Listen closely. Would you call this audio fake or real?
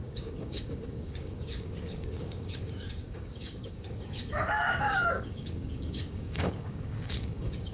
fake